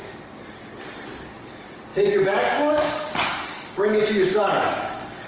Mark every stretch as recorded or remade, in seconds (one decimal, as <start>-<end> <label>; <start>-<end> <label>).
0.0-1.9 recorded; 1.9-5.3 remade

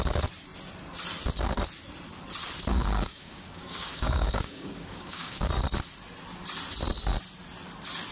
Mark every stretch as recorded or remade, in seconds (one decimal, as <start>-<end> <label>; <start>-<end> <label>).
0.0-2.7 recorded; 2.7-5.5 remade; 5.5-8.1 recorded

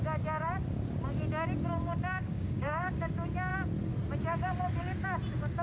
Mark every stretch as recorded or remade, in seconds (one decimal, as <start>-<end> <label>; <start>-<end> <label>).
0.0-2.2 recorded; 2.2-2.9 remade; 2.9-5.6 recorded